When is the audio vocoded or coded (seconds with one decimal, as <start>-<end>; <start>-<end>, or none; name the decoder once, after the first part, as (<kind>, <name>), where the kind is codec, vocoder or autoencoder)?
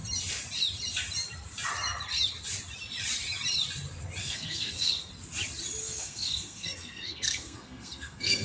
4.2-5.1 (codec, SNAC); 5.8-8.4